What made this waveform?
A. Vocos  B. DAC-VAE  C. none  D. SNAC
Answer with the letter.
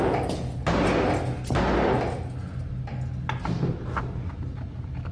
C